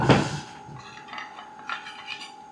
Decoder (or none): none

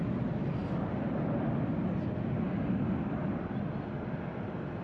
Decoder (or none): none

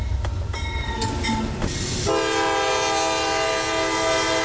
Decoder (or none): none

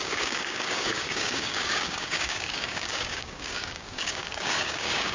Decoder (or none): codec, DAC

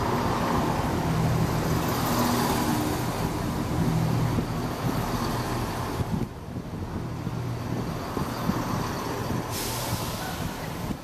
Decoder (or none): none